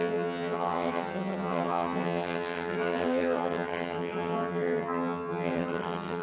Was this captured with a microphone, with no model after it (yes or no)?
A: no